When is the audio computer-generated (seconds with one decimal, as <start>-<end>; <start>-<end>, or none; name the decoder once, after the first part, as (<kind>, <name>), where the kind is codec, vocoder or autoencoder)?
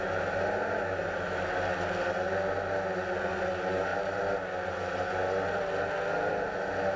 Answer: none